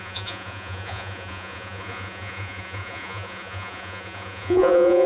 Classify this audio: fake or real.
fake